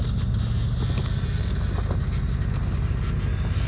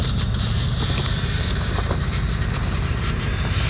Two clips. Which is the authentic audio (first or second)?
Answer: first